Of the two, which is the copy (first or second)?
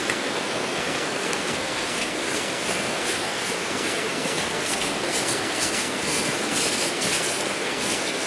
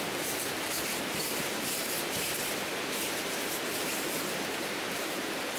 first